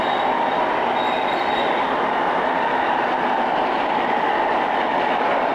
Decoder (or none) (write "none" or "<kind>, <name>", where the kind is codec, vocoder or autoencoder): none